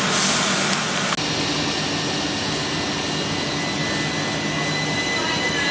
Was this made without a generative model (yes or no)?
yes